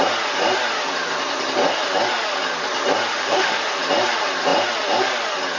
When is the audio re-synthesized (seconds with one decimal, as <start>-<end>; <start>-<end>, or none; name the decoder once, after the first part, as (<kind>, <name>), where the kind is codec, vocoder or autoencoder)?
3.1-3.6 (autoencoder, DAC-VAE)